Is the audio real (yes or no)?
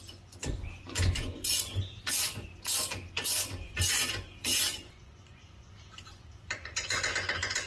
no